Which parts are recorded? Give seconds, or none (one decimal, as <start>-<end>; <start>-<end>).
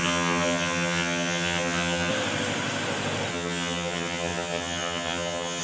2.1-3.3